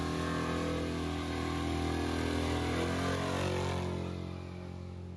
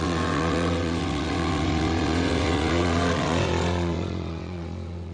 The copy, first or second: second